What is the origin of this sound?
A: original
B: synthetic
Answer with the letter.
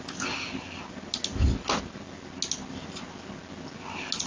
A